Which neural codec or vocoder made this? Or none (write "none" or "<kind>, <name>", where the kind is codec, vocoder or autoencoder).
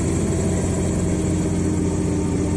none